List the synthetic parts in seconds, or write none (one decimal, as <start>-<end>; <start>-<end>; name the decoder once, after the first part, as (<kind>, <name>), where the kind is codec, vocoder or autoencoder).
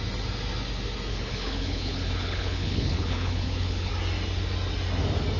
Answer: 1.1-3.9 (codec, HILCodec)